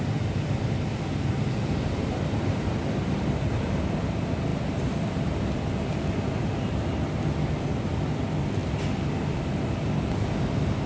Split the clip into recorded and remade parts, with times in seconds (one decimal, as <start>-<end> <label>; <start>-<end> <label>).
0.0-8.6 remade; 8.6-10.1 recorded; 10.1-10.9 remade